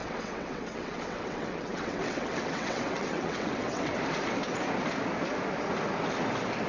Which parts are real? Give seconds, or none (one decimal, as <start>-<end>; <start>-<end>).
4.0-6.7